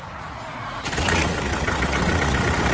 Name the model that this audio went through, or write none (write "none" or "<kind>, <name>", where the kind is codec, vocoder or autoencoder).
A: vocoder, Vocos